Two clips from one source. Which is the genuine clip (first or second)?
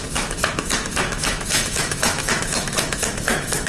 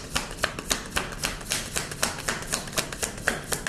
second